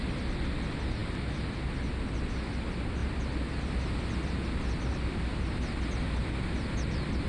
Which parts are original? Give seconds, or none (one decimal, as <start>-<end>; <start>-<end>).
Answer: 0.0-7.3